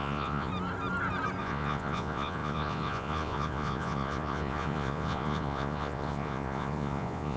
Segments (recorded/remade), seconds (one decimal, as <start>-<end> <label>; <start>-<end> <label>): 0.0-0.5 remade; 0.5-1.4 recorded; 1.4-7.4 remade